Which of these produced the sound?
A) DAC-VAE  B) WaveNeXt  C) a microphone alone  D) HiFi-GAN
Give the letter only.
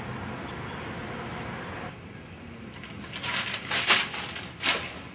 C